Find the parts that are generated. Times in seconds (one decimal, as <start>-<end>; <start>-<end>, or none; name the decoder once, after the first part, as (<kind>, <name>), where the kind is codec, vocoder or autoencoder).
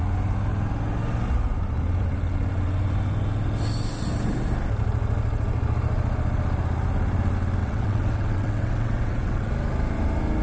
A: 7.6-9.5 (vocoder, WaveNeXt)